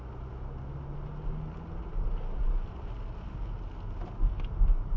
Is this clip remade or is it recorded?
recorded